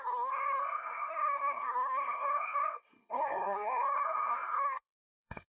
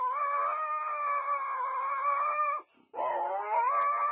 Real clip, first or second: second